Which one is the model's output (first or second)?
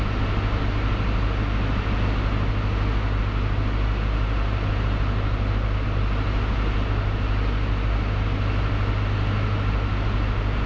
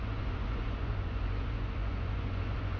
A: second